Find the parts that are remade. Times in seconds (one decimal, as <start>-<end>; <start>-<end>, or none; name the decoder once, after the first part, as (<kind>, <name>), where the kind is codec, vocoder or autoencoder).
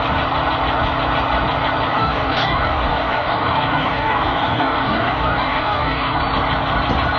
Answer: 1.9-6.2 (codec, DAC)